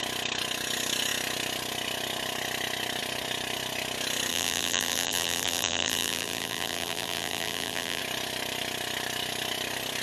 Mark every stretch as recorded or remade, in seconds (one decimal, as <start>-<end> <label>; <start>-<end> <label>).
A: 0.0-4.3 recorded; 4.3-8.0 remade; 8.0-10.0 recorded